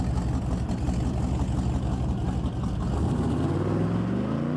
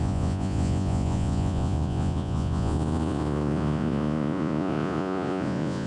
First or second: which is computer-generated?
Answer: second